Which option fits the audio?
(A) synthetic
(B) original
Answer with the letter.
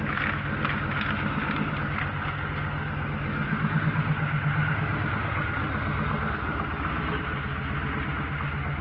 B